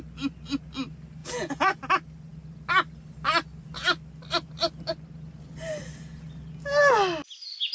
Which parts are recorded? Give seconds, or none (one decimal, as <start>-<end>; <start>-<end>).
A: 0.0-1.2; 1.8-7.7